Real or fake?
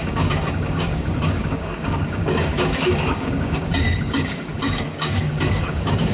fake